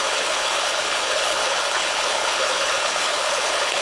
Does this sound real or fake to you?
fake